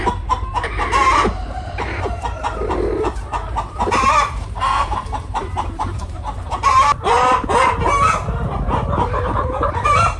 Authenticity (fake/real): fake